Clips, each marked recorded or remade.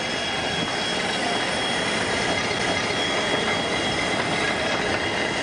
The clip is recorded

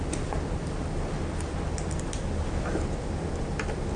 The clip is recorded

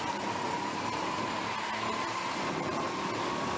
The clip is recorded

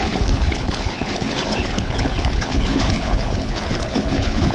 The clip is remade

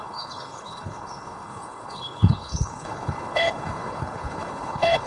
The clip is remade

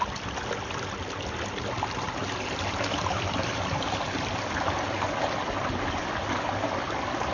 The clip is recorded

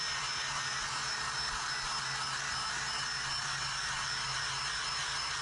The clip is recorded